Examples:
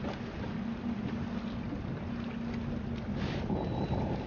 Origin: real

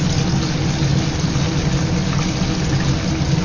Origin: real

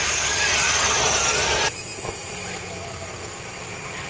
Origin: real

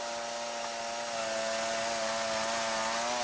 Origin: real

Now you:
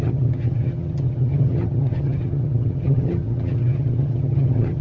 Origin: fake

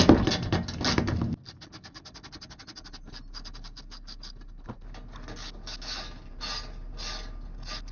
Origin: real